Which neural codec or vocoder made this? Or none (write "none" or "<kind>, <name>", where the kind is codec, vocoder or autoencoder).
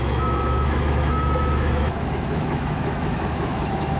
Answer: autoencoder, DAC-VAE